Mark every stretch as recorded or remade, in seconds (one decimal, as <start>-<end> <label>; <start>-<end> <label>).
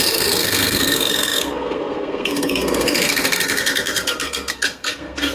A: 0.0-5.3 remade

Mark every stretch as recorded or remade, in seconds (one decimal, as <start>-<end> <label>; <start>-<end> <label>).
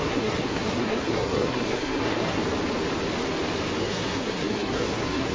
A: 0.0-2.4 remade; 2.4-3.8 recorded; 3.8-5.3 remade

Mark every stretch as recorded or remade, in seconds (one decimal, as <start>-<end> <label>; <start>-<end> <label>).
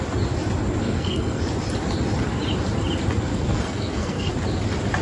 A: 0.0-0.8 recorded; 0.8-1.4 remade; 1.4-3.3 recorded; 3.3-4.3 remade; 4.3-5.0 recorded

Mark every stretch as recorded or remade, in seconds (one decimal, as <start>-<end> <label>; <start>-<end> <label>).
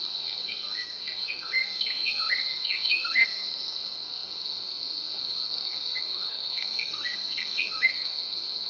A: 0.0-8.7 remade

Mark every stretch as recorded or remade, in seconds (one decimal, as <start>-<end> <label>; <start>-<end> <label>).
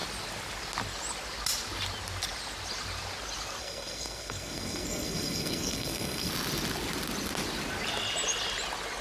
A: 0.0-3.6 recorded; 3.6-6.3 remade; 6.3-9.0 recorded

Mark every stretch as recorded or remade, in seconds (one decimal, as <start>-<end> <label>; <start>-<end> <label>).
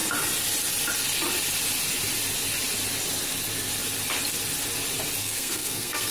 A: 0.0-5.2 recorded; 5.2-6.1 remade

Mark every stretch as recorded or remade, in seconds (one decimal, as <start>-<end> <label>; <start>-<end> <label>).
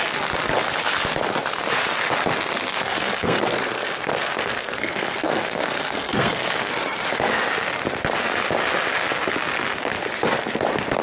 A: 0.0-2.7 recorded; 2.7-6.8 remade; 6.8-11.0 recorded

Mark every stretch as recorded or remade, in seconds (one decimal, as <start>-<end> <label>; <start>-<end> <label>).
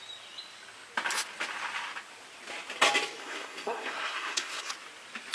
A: 0.0-3.2 recorded; 3.2-4.7 remade; 4.7-5.3 recorded